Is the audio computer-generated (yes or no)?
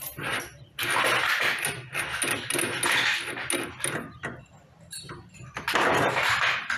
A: no